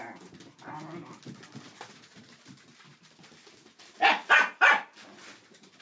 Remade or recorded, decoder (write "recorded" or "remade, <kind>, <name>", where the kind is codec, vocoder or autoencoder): recorded